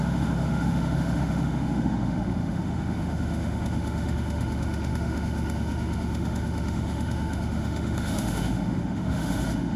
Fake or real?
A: fake